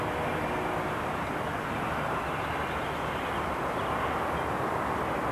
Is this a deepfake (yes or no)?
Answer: no